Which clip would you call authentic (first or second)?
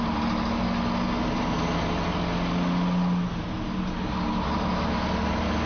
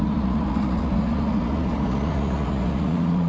first